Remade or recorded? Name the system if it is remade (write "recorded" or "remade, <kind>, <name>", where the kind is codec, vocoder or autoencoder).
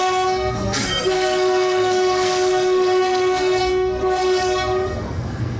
remade, codec, SNAC